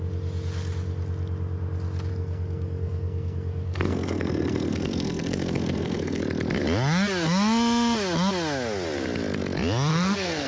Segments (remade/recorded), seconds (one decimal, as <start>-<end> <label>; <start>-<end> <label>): 0.0-2.1 recorded; 2.1-6.2 remade; 6.2-9.9 recorded; 9.9-10.5 remade